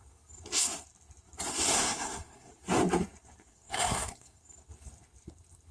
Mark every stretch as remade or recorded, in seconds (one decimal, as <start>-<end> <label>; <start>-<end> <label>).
0.0-1.7 recorded; 1.7-2.5 remade; 2.5-3.5 recorded; 3.5-4.4 remade; 4.4-5.7 recorded